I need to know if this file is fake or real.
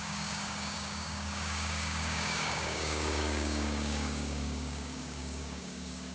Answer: fake